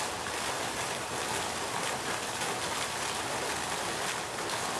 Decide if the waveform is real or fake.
real